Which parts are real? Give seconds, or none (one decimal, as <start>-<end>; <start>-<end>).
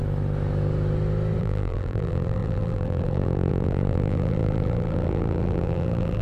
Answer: 0.0-1.4